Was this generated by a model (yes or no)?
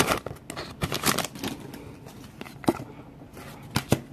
no